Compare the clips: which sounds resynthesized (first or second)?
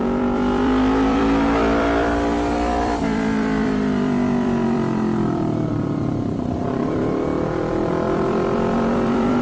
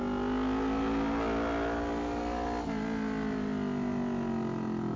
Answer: first